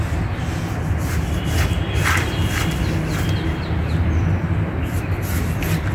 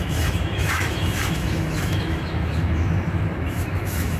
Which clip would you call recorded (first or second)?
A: first